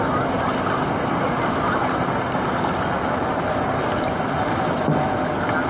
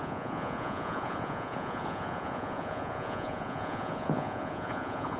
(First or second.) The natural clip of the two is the first